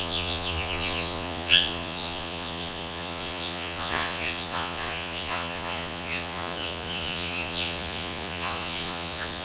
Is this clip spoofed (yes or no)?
yes